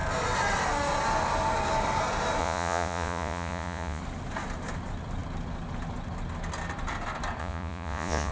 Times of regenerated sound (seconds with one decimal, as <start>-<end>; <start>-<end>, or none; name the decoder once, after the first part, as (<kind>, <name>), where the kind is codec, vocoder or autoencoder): 2.4-4.0 (vocoder, Vocos); 7.4-8.3